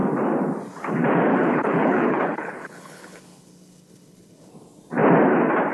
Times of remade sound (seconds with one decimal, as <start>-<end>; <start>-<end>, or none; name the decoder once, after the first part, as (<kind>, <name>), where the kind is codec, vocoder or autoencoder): 1.3-4.5 (codec, HILCodec)